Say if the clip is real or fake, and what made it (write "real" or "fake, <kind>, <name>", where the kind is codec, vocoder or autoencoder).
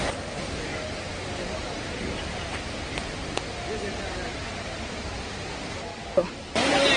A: real